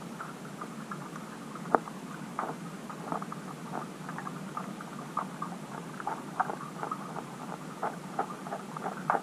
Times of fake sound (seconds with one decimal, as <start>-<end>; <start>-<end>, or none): none